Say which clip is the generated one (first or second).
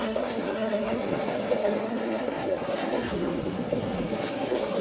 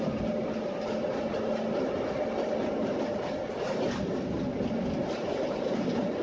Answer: first